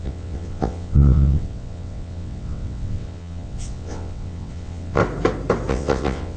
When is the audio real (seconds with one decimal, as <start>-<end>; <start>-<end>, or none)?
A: 5.0-5.7